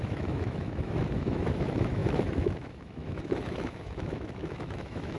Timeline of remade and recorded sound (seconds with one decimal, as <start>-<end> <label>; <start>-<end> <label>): 0.0-5.2 remade